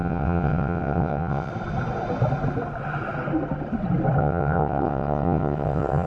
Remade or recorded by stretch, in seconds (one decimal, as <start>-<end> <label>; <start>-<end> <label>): 0.0-1.5 remade; 1.5-4.2 recorded; 4.2-6.1 remade